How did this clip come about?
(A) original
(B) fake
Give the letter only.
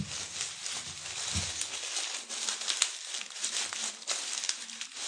A